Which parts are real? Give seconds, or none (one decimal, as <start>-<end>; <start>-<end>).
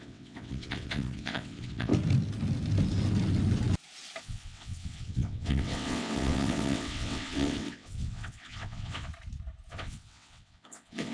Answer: 1.9-4.2; 9.1-9.7